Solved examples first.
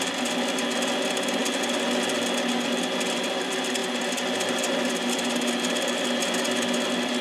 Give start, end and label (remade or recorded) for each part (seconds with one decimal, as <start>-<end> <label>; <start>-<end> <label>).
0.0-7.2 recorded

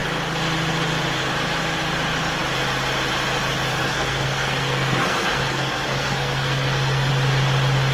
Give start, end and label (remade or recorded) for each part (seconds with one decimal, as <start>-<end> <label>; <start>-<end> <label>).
0.0-3.7 recorded; 3.7-7.1 remade; 7.1-7.9 recorded

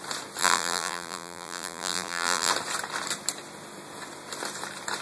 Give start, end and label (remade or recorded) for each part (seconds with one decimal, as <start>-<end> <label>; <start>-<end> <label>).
0.0-0.4 recorded; 0.4-2.5 remade; 2.5-5.0 recorded

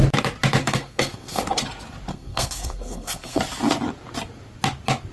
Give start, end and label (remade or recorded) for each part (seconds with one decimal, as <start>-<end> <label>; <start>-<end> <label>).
0.0-0.6 recorded; 0.6-1.4 remade; 1.4-2.1 recorded; 2.1-3.4 remade; 3.4-5.1 recorded